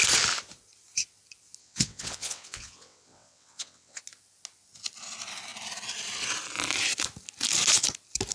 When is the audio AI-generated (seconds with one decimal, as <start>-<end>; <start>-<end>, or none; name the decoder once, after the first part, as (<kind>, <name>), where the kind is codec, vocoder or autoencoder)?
1.6-4.0 (vocoder, WaveNeXt)